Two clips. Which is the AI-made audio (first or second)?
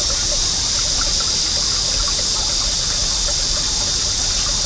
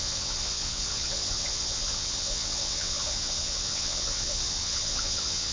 second